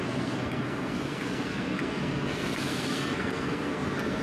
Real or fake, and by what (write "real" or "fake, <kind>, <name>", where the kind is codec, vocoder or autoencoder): fake, codec, SNAC